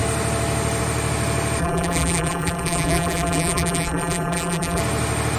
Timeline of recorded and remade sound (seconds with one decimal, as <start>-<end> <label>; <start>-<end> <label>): 0.0-1.6 recorded; 1.6-4.8 remade; 4.8-5.4 recorded